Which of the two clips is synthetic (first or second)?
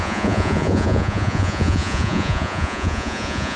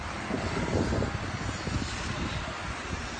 first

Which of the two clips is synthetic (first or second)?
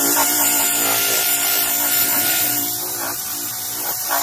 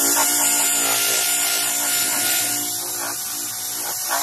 first